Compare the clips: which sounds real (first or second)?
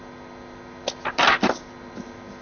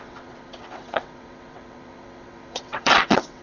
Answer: first